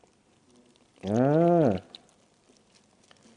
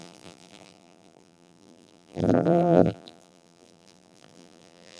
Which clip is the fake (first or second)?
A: second